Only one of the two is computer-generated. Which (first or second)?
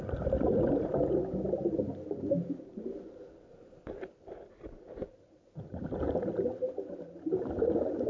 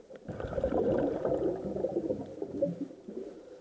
second